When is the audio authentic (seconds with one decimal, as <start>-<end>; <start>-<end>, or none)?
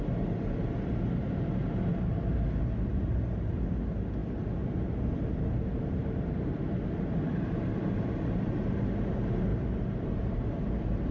0.0-9.5; 10.3-11.1